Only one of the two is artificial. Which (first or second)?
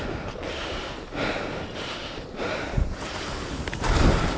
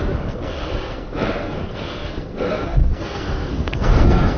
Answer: second